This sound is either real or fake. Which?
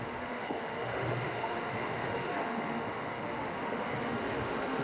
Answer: fake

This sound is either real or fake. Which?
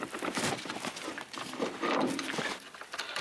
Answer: fake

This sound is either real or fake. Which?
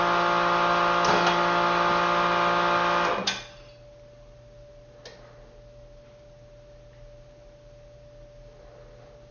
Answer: real